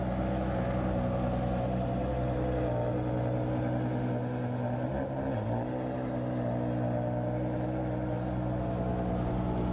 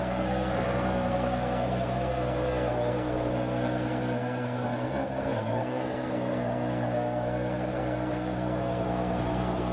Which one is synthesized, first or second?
second